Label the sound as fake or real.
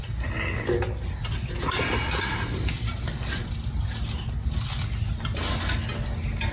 real